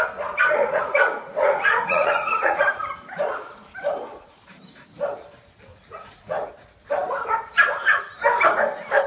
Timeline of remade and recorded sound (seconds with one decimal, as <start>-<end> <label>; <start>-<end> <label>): 0.0-0.6 recorded; 0.6-2.9 remade; 2.9-5.7 recorded; 5.7-6.5 remade; 6.5-9.1 recorded